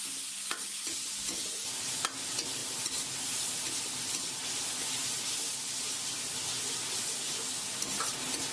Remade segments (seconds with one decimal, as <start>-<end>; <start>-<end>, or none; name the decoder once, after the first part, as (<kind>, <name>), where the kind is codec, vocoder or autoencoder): none